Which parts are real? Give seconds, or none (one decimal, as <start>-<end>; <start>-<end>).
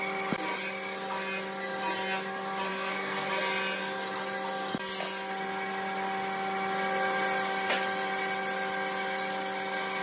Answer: 0.0-2.7; 3.3-10.0